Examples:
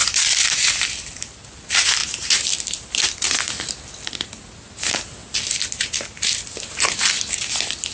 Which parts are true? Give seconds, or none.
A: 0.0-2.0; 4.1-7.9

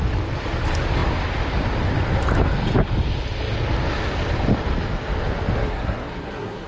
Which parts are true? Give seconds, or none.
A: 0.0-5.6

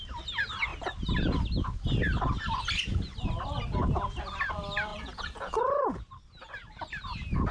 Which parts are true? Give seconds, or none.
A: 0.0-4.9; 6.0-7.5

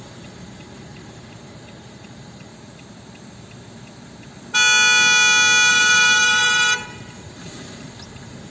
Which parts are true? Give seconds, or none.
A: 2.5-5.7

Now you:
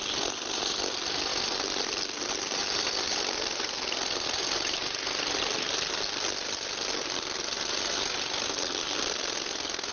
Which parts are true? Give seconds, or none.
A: 0.0-9.9

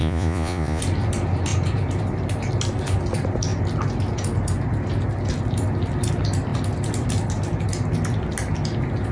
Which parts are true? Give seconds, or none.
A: 0.8-9.1

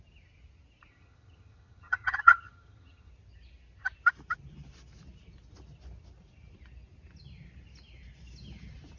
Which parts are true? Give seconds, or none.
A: 0.0-0.9; 3.1-9.0

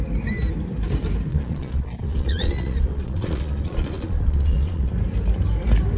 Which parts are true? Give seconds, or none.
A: 0.0-1.3; 4.9-6.0